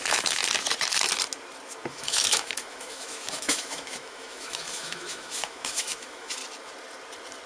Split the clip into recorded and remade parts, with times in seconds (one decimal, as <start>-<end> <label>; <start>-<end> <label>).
0.0-0.4 remade; 0.4-1.9 recorded; 1.9-6.4 remade; 6.4-7.5 recorded